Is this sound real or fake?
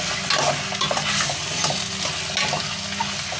real